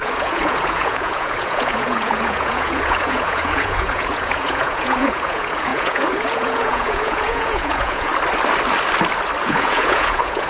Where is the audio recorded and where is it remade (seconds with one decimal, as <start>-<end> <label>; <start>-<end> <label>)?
0.0-8.1 remade; 8.1-9.4 recorded; 9.4-10.5 remade